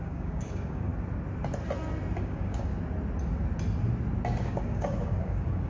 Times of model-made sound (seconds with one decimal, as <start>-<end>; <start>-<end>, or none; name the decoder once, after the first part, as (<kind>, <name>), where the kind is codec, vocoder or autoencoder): 0.0-0.9 (codec, DAC); 2.2-2.7; 4.4-5.7

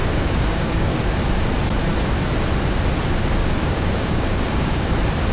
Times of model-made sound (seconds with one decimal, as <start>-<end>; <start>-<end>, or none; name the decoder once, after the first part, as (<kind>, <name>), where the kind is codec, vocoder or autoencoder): 0.0-1.0 (codec, DAC); 3.4-4.8

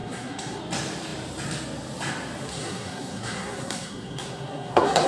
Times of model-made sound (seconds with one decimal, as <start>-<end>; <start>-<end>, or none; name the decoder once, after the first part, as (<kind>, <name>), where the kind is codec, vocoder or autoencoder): 0.0-0.6 (codec, SNAC); 2.5-5.1

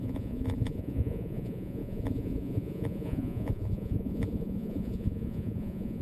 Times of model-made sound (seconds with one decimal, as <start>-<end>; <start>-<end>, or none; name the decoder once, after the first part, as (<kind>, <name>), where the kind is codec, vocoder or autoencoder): 0.0-6.0 (vocoder, Vocos)